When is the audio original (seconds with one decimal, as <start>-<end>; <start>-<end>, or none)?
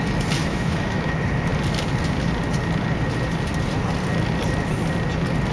0.0-0.4; 1.1-5.5